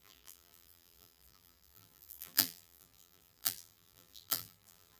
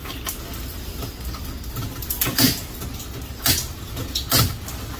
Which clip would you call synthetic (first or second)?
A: first